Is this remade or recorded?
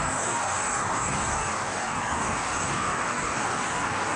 remade